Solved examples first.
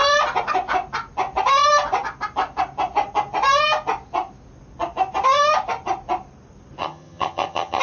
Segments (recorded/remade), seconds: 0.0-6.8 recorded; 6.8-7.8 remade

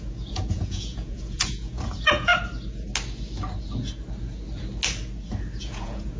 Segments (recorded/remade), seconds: 0.0-2.3 remade; 2.3-5.6 recorded; 5.6-6.2 remade

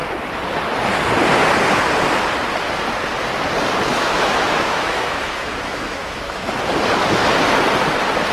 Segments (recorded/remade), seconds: 0.0-3.9 recorded; 3.9-6.5 remade; 6.5-8.3 recorded

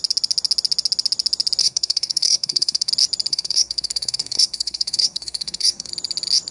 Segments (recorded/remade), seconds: 0.0-1.6 recorded; 1.6-2.9 remade; 2.9-3.3 recorded; 3.3-5.9 remade; 5.9-6.5 recorded